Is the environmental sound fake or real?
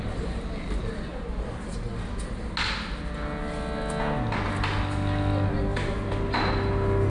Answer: real